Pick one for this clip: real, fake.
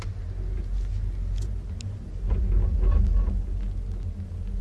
real